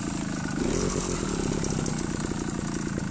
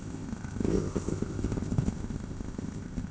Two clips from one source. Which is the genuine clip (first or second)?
first